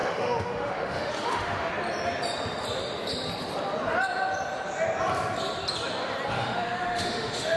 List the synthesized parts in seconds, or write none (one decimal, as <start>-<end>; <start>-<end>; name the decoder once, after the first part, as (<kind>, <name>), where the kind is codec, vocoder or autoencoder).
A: 0.0-1.7 (autoencoder, DAC-VAE); 6.3-7.6